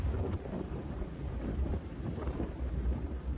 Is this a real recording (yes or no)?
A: no